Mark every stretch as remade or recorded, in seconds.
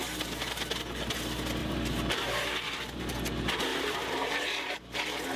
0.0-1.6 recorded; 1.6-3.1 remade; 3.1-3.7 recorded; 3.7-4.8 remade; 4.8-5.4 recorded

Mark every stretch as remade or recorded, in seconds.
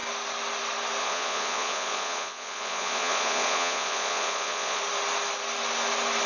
0.0-1.0 recorded; 1.0-4.8 remade; 4.8-6.3 recorded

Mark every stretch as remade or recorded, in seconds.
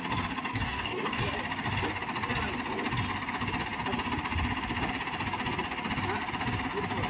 0.0-0.5 recorded; 0.5-1.2 remade; 1.2-7.1 recorded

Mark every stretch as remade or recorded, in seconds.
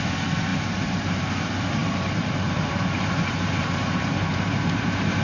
0.0-0.5 recorded; 0.5-1.2 remade; 1.2-1.8 recorded; 1.8-5.2 remade